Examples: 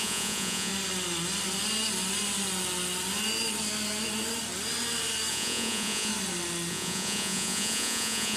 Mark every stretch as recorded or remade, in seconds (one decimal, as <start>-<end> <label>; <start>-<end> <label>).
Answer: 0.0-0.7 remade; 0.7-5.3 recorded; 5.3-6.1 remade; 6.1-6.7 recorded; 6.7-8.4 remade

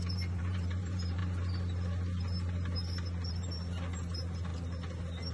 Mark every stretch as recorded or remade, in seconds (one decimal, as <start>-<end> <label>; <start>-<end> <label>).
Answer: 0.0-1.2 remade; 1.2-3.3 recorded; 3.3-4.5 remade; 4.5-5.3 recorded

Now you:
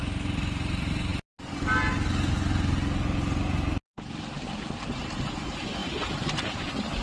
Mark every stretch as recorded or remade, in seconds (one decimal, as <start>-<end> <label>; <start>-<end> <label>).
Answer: 0.0-7.0 recorded